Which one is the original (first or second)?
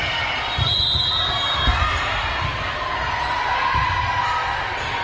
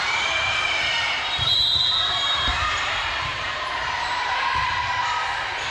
first